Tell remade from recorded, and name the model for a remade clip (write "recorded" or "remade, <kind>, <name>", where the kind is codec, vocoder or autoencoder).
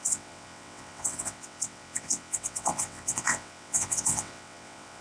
remade, vocoder, WaveNeXt